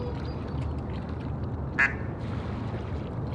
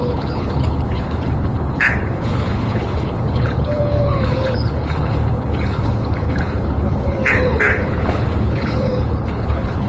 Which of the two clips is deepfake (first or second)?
second